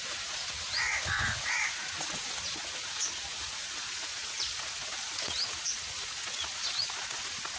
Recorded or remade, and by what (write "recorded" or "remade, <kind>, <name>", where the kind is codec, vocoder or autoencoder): remade, vocoder, Vocos